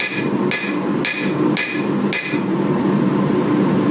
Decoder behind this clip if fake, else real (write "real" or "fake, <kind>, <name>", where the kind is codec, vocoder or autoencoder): real